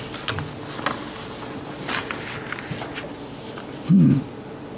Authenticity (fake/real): real